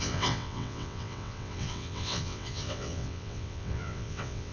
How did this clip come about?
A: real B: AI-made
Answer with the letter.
B